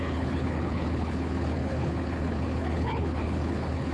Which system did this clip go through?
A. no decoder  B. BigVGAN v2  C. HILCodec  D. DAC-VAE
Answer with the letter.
C